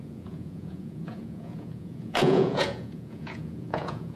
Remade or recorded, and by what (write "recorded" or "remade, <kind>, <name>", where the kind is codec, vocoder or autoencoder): remade, vocoder, Vocos